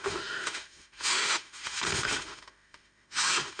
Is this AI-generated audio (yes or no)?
yes